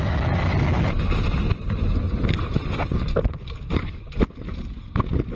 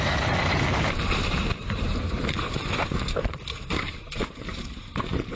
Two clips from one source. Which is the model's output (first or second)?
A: second